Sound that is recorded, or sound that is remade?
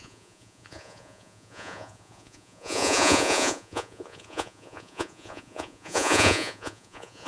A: remade